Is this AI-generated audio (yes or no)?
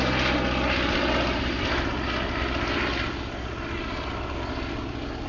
no